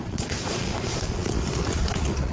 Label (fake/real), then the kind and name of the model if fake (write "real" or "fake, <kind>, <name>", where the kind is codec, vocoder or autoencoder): fake, vocoder, Vocos